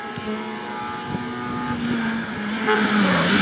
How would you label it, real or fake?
real